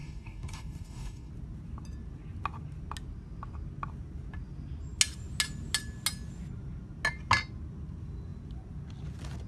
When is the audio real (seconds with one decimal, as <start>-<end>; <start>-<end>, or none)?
1.3-9.5